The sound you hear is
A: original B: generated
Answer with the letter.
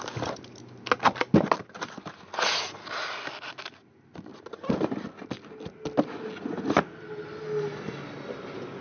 A